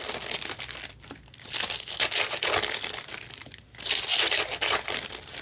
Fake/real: real